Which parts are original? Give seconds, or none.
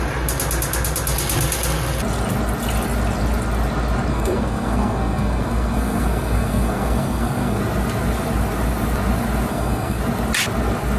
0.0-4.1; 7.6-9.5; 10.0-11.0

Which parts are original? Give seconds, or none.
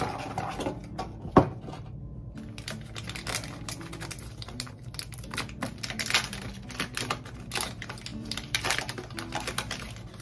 0.0-8.1; 9.1-10.2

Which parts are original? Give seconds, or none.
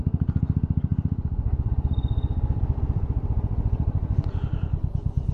0.0-5.3